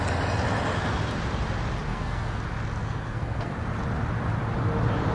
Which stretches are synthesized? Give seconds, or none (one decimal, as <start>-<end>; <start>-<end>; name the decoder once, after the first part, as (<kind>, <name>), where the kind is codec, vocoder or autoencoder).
1.9-2.4 (codec, SNAC); 2.8-3.5